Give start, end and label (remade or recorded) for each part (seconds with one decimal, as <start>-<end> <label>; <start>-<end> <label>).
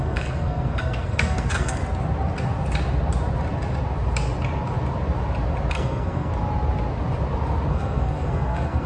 0.0-1.8 remade; 1.8-5.7 recorded; 5.7-6.3 remade; 6.3-7.7 recorded; 7.7-8.9 remade